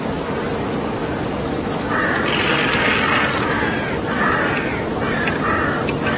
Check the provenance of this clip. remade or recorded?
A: recorded